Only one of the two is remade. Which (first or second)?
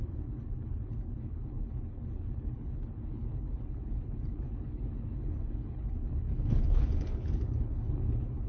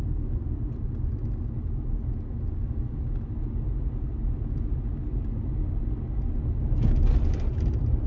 first